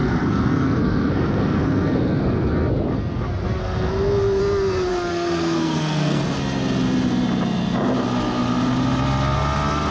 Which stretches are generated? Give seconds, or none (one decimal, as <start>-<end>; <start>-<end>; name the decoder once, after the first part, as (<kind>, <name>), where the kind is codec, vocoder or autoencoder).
0.0-2.5 (codec, SNAC); 3.6-4.4; 4.9-6.2